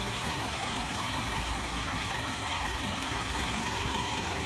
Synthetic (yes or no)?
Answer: yes